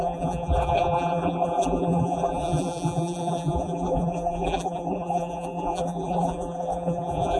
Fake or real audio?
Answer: fake